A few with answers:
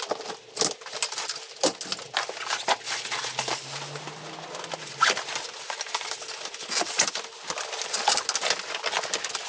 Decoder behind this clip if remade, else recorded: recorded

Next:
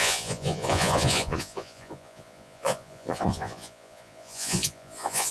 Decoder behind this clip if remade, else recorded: remade, vocoder, Vocos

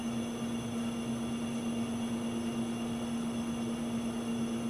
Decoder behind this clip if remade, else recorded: recorded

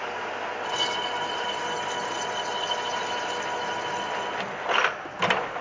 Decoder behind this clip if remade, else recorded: recorded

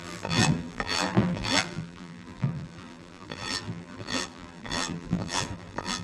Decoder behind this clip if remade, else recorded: remade, vocoder, BigVGAN v2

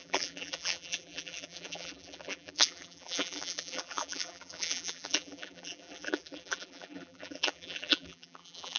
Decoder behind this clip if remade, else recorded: remade, vocoder, BigVGAN v2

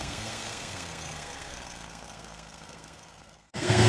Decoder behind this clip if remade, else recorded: remade, codec, SNAC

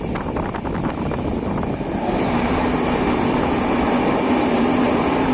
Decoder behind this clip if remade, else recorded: recorded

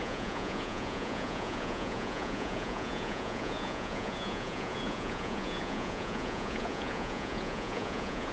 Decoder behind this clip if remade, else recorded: remade, vocoder, Vocos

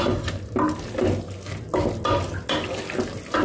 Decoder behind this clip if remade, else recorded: recorded